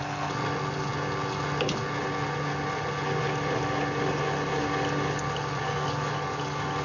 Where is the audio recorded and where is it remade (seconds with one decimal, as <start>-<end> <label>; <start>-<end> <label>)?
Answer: 0.0-6.8 recorded